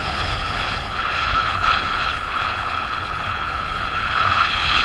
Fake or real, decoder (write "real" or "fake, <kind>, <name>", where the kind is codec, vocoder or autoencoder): fake, codec, HILCodec